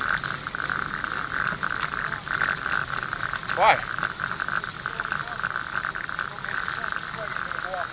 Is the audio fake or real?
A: real